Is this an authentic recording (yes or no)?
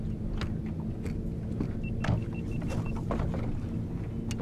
yes